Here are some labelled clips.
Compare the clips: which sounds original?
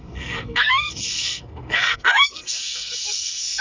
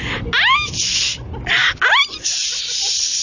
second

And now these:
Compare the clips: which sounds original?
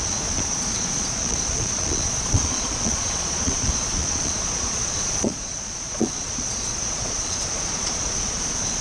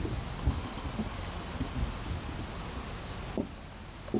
second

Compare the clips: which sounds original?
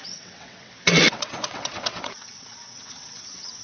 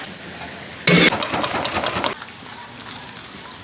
second